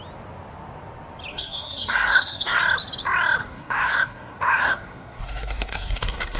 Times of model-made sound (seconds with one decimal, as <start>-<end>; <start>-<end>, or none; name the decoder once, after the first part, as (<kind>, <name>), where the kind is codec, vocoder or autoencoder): 1.3-2.6 (codec, SNAC); 3.4-6.4